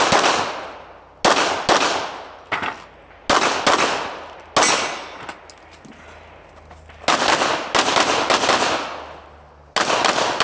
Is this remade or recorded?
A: recorded